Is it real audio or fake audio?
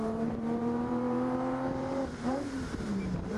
fake